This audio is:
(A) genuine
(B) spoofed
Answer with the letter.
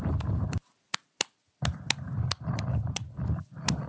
B